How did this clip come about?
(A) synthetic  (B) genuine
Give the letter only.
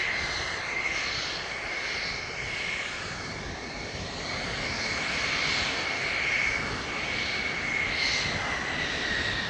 B